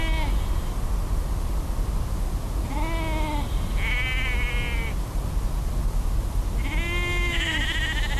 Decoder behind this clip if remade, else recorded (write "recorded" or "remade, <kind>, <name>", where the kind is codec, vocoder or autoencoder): recorded